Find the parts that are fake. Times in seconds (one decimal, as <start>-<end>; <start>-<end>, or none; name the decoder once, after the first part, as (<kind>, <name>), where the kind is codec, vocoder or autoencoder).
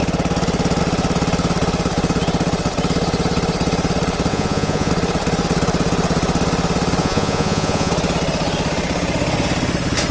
4.3-4.9 (vocoder, Vocos); 7.0-7.9